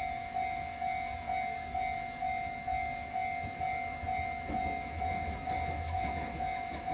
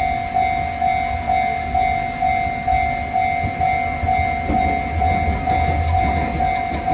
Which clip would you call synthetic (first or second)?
first